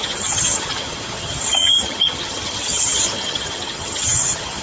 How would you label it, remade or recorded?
remade